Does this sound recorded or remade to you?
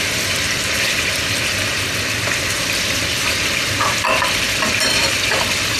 remade